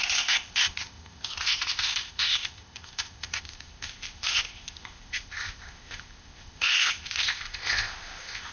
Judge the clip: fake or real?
fake